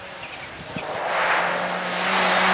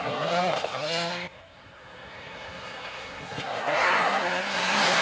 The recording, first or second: first